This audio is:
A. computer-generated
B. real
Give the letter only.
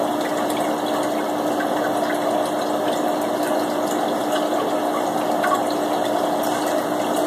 B